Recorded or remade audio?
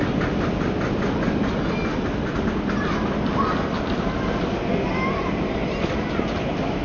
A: recorded